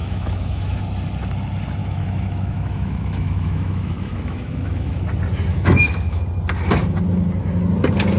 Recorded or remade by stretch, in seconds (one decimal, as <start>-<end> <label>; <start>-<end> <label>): 0.0-0.8 remade; 0.8-1.8 recorded; 1.8-5.0 remade; 5.0-5.5 recorded; 5.5-6.2 remade; 6.2-8.2 recorded